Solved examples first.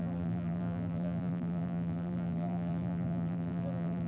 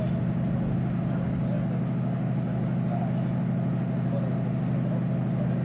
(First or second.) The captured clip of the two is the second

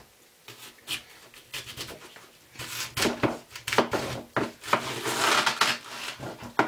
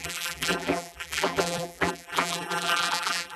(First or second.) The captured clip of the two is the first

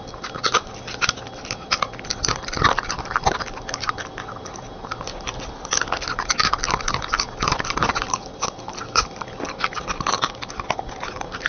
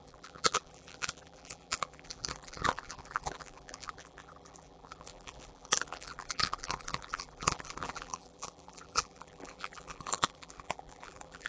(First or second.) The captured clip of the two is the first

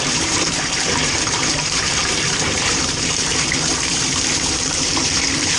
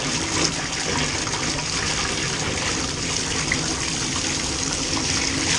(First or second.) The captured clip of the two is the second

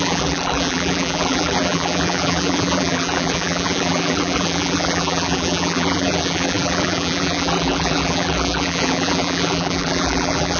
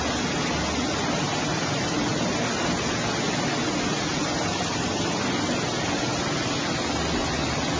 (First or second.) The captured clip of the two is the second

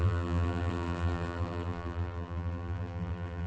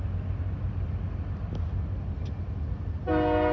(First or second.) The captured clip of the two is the second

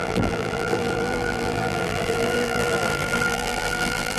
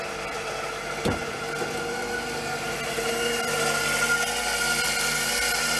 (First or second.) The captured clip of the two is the second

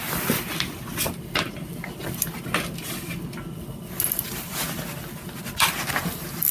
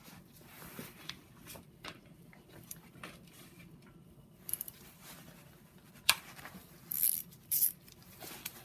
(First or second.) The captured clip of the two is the first